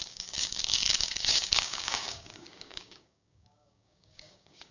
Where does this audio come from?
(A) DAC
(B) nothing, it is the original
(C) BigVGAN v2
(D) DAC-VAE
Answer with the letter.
A